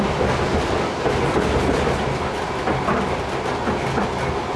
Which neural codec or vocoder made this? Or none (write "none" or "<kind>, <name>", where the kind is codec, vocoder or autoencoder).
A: none